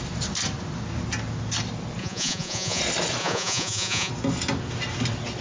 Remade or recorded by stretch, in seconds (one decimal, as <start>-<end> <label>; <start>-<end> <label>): 0.0-2.0 recorded; 2.0-2.8 remade; 2.8-3.2 recorded; 3.2-4.1 remade; 4.1-5.4 recorded